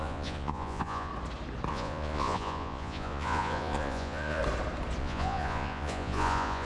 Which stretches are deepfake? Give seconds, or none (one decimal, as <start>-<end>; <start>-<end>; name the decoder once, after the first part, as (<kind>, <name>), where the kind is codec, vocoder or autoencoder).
0.0-1.1 (vocoder, Vocos); 1.7-4.4; 5.0-6.6